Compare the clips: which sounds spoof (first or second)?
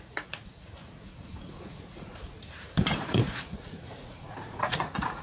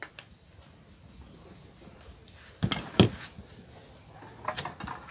first